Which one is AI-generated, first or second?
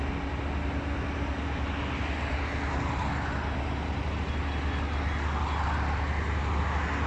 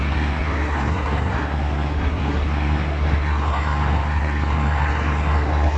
second